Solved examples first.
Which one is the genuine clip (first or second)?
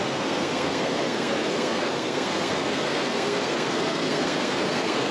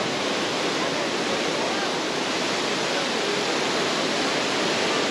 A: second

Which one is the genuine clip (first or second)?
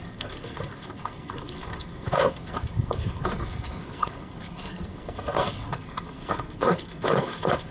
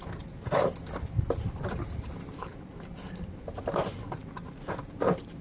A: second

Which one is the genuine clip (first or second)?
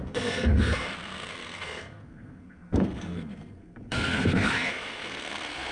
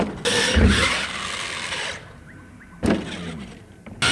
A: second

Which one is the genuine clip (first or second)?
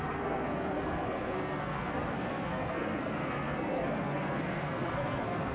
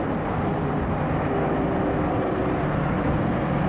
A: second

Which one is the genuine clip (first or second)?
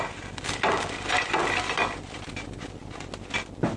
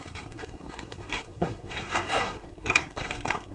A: first